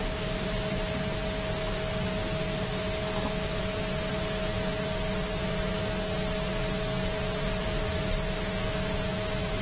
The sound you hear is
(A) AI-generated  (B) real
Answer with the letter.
B